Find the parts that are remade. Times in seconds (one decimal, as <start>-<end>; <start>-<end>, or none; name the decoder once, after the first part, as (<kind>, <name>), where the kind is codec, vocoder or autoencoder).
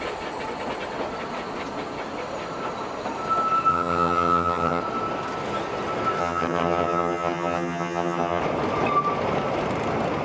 3.7-4.8 (vocoder, HiFi-GAN); 6.2-8.4